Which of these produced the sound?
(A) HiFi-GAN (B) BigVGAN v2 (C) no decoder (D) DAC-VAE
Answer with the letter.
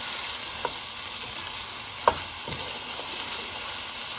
C